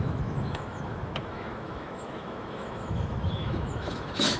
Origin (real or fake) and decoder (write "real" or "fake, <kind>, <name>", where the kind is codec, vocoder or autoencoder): fake, autoencoder, DAC-VAE